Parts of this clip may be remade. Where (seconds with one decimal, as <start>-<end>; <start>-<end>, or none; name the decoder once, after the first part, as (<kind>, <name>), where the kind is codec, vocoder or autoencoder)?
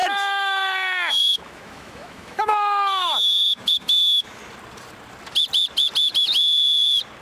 0.0-4.4 (autoencoder, DAC-VAE)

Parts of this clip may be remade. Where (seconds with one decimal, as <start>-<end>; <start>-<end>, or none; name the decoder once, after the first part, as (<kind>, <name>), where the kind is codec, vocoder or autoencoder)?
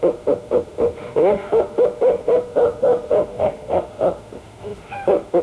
0.0-5.4 (autoencoder, DAC-VAE)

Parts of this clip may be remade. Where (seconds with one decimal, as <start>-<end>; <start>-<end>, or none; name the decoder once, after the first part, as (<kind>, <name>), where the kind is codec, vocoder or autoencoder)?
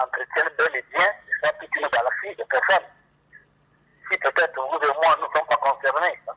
1.1-2.1 (autoencoder, DAC-VAE)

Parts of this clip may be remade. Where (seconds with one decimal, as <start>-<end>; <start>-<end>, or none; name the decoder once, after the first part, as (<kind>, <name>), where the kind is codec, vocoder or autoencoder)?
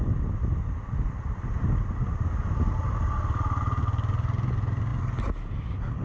none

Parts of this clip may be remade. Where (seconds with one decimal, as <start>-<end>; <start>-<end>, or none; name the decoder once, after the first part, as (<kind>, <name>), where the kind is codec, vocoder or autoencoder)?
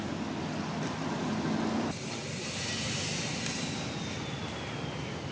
none